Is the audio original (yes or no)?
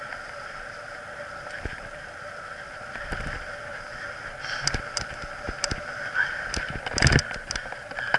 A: yes